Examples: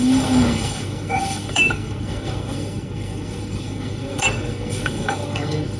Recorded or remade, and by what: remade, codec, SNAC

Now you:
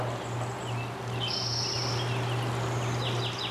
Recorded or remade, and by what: recorded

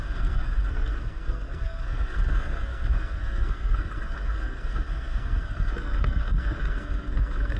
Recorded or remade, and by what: remade, codec, SNAC